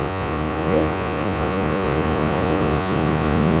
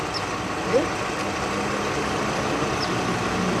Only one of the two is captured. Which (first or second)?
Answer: second